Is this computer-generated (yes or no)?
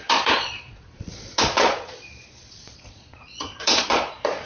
yes